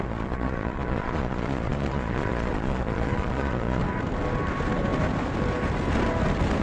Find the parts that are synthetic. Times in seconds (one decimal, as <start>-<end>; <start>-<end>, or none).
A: 0.0-3.8